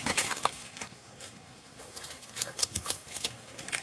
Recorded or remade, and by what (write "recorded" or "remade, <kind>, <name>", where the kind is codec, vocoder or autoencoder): remade, codec, SNAC